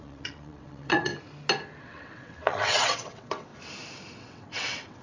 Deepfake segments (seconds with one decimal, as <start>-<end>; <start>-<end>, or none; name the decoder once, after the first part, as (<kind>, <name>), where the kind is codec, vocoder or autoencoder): 0.0-1.1 (vocoder, WaveNeXt); 1.8-3.5; 4.2-5.0